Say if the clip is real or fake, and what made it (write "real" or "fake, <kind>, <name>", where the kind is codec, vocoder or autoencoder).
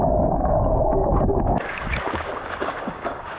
fake, codec, DAC